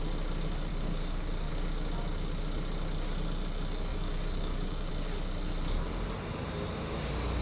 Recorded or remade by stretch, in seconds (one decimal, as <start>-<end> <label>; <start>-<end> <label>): 0.0-0.7 recorded; 0.7-1.5 remade; 1.5-3.9 recorded; 3.9-4.9 remade; 4.9-7.4 recorded